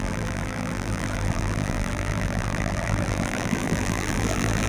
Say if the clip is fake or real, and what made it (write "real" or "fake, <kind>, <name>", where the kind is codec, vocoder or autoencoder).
fake, vocoder, BigVGAN v2